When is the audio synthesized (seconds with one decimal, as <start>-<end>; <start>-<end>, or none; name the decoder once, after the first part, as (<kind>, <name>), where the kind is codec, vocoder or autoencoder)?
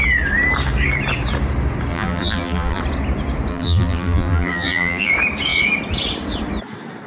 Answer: 1.9-2.8 (vocoder, BigVGAN v2); 3.5-5.1